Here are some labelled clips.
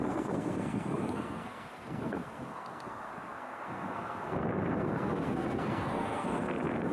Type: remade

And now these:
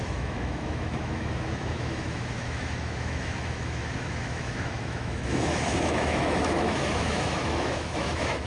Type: remade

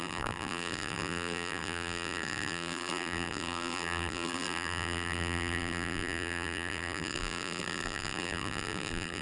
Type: remade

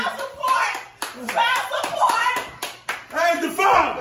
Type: remade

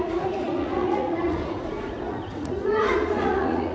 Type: remade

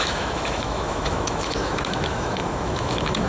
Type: remade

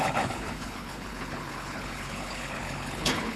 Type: remade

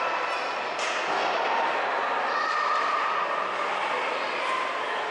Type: recorded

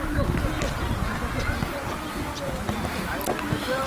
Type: recorded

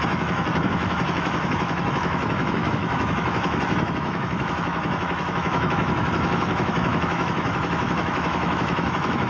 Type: remade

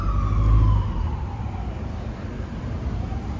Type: recorded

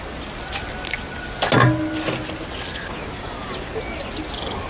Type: recorded